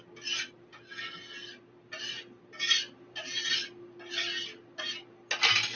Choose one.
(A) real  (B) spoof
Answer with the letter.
A